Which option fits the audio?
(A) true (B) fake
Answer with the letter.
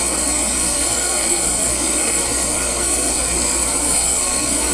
B